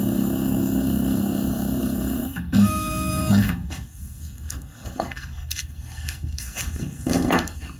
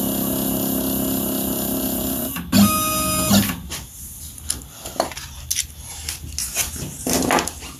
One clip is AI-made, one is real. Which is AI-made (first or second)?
first